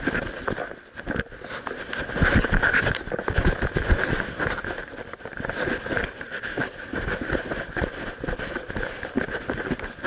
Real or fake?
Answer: real